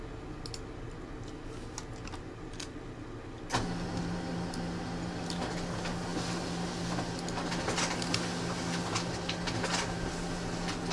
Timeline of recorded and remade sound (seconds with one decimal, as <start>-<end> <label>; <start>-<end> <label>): 0.0-10.9 recorded